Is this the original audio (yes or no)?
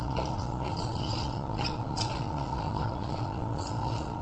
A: no